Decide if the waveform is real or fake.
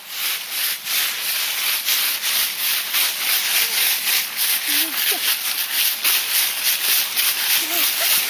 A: real